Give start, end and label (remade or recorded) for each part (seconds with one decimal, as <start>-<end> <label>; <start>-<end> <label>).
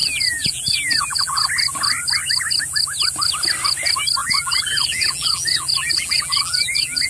0.0-1.5 remade; 1.5-4.2 recorded; 4.2-7.1 remade